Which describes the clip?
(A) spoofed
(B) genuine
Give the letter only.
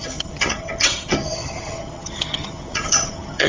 A